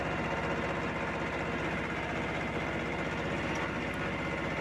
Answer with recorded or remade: recorded